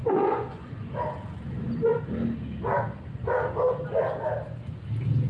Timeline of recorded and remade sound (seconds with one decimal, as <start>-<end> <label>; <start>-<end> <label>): 0.0-0.9 remade; 0.9-5.3 recorded